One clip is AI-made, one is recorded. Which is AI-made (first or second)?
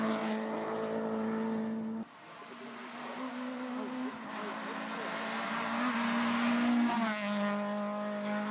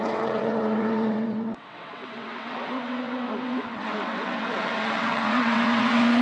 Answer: second